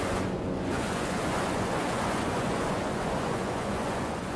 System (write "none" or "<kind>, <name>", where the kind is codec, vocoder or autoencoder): vocoder, Vocos